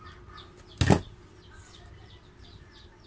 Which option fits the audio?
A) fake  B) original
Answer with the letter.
B